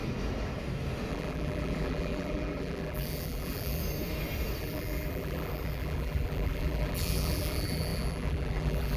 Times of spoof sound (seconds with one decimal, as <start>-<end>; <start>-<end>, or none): 1.1-3.8; 4.6-9.0